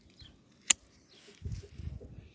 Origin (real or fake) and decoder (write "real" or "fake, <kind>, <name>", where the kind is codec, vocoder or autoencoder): real